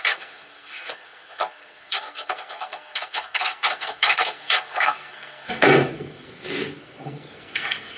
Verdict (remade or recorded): remade